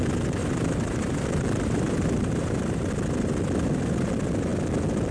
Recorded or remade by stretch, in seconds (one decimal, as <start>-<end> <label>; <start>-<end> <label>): 0.0-0.4 recorded; 0.4-2.9 remade; 2.9-5.1 recorded